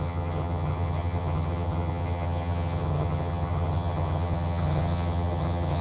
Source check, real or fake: fake